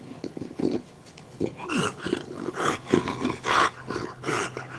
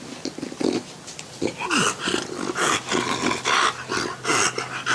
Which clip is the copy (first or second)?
first